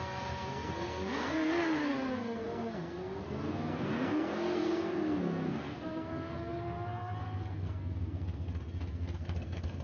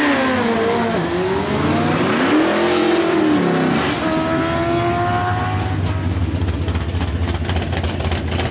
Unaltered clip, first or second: second